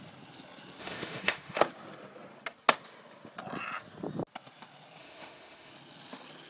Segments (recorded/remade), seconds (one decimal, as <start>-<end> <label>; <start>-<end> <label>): 0.0-0.8 recorded; 0.8-1.6 remade; 1.6-5.0 recorded; 5.0-5.7 remade; 5.7-6.5 recorded